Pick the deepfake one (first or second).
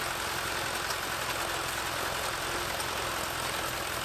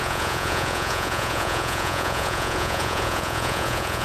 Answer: second